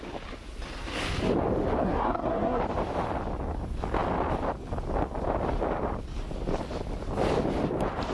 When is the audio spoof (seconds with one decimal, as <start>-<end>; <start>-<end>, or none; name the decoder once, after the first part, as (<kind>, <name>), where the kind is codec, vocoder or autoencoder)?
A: 1.8-2.6 (codec, SNAC)